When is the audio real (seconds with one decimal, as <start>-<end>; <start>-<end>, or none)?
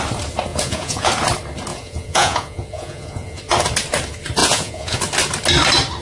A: 0.0-0.5; 1.1-1.7; 3.4-4.4; 5.0-6.0